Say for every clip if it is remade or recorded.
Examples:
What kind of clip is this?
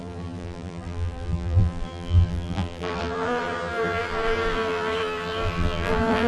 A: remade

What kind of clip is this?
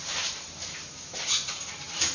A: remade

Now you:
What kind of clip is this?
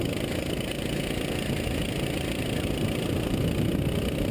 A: recorded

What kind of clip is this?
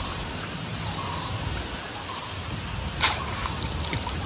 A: remade